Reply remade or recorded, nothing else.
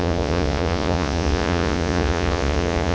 remade